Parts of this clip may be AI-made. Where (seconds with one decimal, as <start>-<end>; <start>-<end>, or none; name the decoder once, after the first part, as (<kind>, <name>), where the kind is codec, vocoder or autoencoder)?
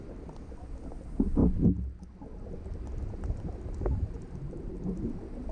none